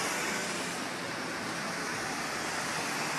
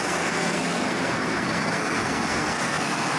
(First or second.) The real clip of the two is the first